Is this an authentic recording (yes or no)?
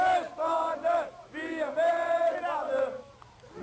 no